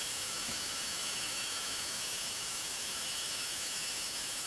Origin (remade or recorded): remade